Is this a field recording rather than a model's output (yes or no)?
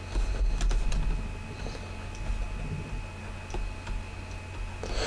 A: yes